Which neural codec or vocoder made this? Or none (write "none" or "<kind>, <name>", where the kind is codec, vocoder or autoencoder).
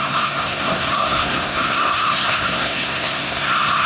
codec, SNAC